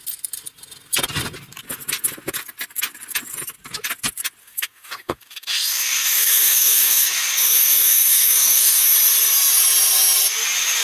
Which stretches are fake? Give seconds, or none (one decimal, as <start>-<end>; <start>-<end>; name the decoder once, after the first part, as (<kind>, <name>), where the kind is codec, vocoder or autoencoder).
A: 4.4-8.9 (codec, DAC)